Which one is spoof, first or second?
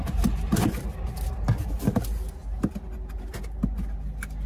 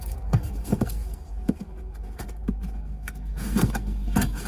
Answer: second